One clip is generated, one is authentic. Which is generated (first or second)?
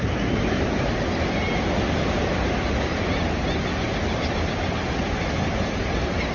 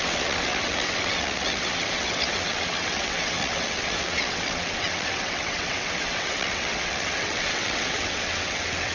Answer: second